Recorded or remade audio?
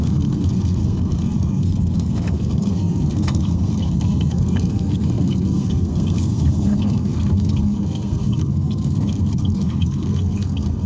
remade